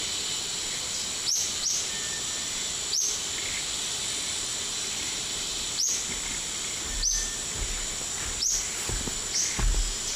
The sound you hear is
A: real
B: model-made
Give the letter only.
A